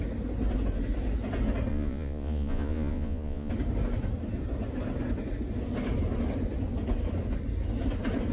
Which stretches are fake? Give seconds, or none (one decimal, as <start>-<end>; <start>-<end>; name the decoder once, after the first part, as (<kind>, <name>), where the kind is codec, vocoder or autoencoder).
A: 1.7-3.5 (vocoder, Vocos)